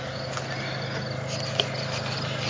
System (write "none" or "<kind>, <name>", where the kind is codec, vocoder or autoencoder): none